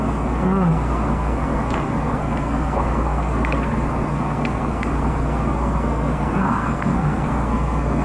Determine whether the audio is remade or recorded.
remade